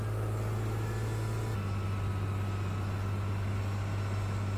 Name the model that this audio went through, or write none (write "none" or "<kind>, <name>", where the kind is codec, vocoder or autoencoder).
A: none